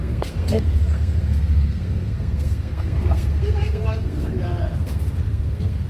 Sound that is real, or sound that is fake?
fake